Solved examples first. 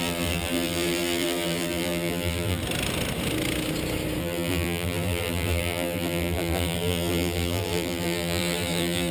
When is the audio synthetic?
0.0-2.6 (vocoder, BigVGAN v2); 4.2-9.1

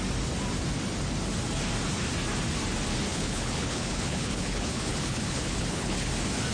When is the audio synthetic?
3.1-6.1 (codec, HILCodec)

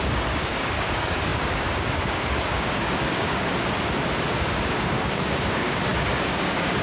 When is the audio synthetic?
0.0-3.5 (codec, DAC); 4.3-6.8

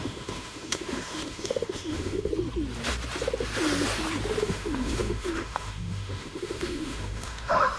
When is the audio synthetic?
0.0-2.3 (autoencoder, DAC-VAE); 4.4-7.8

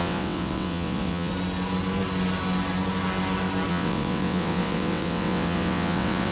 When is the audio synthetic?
0.0-1.3 (vocoder, WaveNeXt); 3.7-6.3